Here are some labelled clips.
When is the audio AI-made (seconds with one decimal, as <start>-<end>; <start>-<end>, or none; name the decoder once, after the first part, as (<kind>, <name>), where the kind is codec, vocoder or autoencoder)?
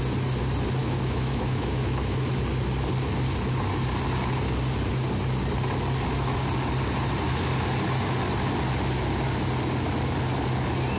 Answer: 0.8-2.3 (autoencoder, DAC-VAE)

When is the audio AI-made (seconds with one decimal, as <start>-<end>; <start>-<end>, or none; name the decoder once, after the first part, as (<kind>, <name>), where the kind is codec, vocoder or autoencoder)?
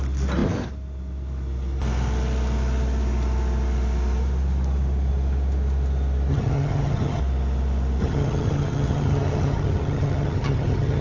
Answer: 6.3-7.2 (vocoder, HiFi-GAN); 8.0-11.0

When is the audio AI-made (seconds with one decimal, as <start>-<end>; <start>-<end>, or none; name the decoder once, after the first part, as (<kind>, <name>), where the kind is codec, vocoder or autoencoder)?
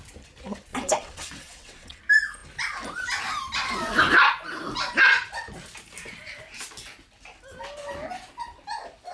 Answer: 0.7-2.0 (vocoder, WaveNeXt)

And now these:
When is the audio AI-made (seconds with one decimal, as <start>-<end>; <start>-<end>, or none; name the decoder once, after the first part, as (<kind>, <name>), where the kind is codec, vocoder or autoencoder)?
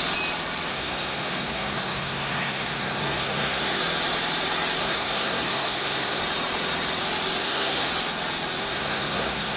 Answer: 0.7-3.8 (codec, SNAC); 4.8-6.2; 7.4-7.9; 8.6-9.6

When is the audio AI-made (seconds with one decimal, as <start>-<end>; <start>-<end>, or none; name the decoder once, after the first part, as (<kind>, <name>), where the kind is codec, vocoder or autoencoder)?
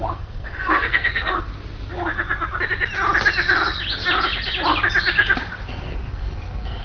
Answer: 0.0-1.5 (codec, SNAC); 5.6-6.8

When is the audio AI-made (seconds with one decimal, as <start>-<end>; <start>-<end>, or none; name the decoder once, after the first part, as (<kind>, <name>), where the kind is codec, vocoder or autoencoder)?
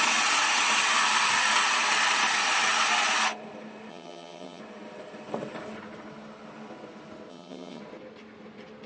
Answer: 3.9-4.6 (vocoder, HiFi-GAN); 7.3-7.8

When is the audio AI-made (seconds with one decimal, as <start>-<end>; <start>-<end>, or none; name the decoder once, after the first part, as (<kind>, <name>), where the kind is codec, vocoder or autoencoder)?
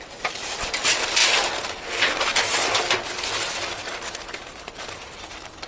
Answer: 0.0-1.2 (vocoder, BigVGAN v2); 4.6-5.7